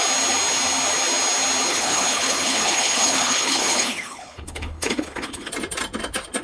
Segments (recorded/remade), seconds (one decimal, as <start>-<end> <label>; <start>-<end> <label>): 0.0-1.7 recorded; 1.7-5.5 remade; 5.5-6.4 recorded